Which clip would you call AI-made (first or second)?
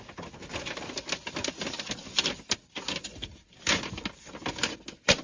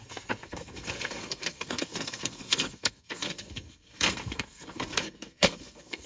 second